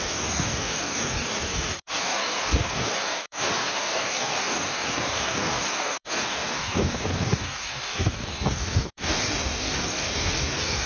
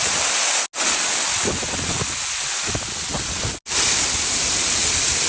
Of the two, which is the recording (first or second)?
second